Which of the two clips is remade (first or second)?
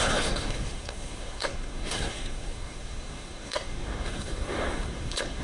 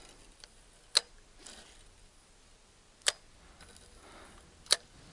first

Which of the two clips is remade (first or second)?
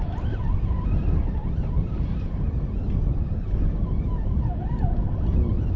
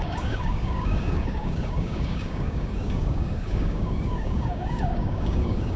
second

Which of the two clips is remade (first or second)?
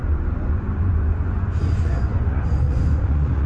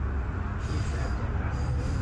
first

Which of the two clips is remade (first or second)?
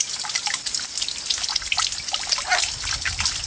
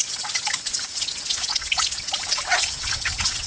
second